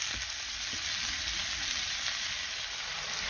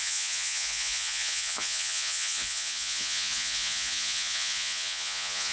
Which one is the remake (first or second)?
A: second